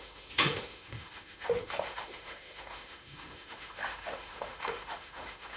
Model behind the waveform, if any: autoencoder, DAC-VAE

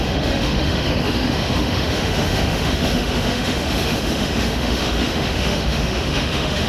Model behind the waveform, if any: autoencoder, DAC-VAE